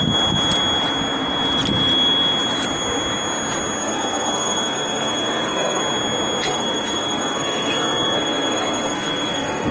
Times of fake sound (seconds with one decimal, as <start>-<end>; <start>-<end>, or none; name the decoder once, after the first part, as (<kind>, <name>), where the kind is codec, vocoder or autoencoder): 3.8-5.8 (codec, SNAC); 6.5-9.7